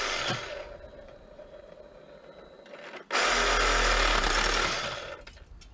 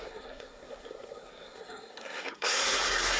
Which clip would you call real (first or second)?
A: first